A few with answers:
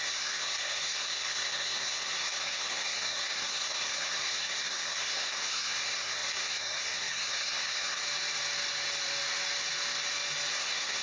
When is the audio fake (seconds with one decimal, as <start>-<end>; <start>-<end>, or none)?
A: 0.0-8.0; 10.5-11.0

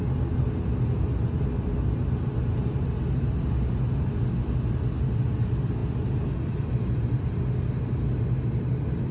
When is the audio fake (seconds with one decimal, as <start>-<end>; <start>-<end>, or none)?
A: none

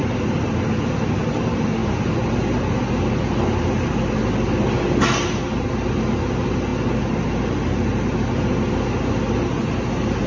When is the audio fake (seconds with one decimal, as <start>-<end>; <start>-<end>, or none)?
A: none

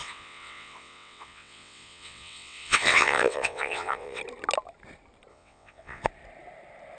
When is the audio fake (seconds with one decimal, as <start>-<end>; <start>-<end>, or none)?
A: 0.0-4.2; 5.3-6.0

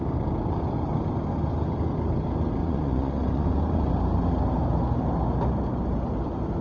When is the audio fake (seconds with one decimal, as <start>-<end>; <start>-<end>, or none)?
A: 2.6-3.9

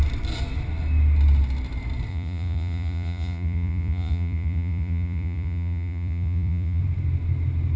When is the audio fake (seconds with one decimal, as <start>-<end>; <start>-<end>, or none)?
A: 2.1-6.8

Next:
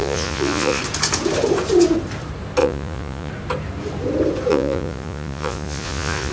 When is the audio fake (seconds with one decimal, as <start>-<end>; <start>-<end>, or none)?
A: 0.0-0.8; 2.6-3.3; 4.5-6.3

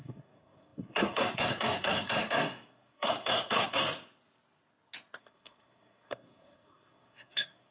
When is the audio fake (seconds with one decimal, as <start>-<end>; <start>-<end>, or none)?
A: 0.0-3.8; 5.2-7.7